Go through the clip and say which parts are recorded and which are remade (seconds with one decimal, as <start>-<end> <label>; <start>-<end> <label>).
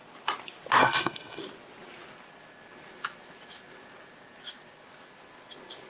0.0-0.8 recorded; 0.8-1.4 remade; 1.4-5.9 recorded